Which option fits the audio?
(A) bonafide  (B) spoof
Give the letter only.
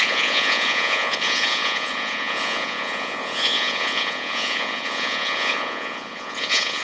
B